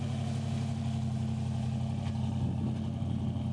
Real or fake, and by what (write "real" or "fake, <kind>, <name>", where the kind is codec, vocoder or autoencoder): real